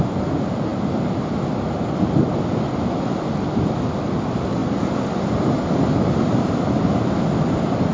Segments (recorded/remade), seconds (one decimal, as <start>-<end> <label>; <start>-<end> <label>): 0.0-7.9 recorded